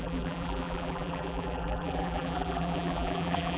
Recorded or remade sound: remade